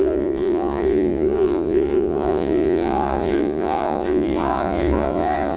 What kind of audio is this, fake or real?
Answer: fake